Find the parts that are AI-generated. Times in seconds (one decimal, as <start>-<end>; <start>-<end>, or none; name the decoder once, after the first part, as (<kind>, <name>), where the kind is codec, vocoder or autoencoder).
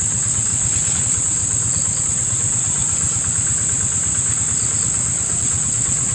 0.0-0.5 (vocoder, WaveNeXt); 1.0-1.4; 2.0-2.8; 5.4-6.1